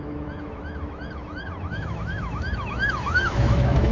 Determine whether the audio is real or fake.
fake